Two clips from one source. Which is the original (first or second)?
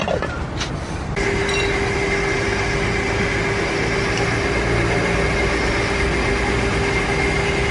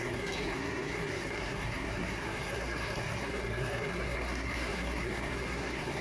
first